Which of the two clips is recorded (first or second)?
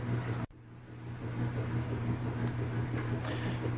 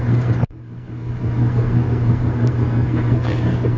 first